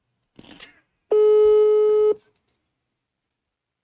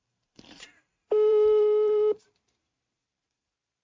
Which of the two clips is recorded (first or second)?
first